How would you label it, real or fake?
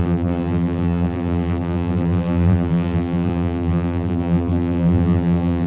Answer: fake